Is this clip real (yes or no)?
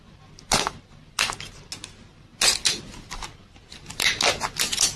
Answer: yes